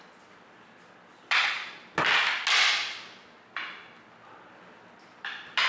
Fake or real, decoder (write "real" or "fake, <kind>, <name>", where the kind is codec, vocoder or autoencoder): real